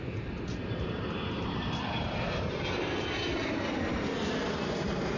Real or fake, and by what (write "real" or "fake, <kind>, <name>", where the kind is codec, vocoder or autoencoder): fake, vocoder, BigVGAN v2